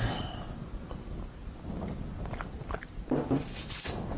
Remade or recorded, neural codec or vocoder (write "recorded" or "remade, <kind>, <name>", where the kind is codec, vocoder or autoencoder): recorded